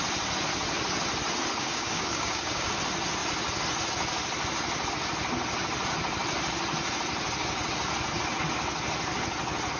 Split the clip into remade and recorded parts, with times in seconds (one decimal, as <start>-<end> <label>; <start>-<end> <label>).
0.0-1.6 recorded; 1.6-2.7 remade; 2.7-9.8 recorded